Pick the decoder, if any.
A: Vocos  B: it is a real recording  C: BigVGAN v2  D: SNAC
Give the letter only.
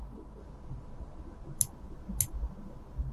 B